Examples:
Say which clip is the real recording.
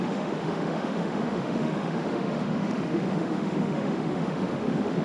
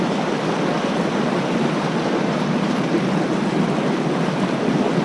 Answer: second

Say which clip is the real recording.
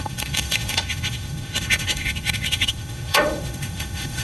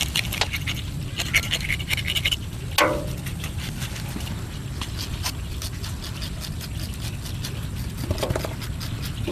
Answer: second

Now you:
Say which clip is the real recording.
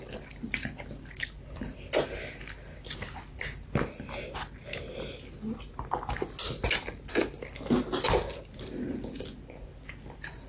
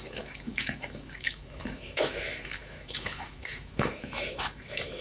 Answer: first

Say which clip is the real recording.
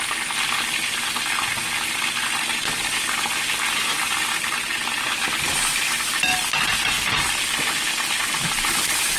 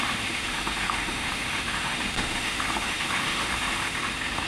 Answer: first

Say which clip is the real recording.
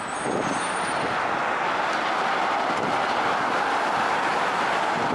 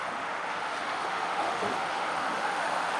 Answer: first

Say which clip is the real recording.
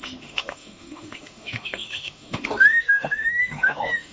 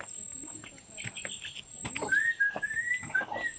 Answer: second